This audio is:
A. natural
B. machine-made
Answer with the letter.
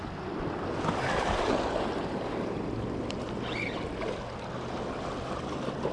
A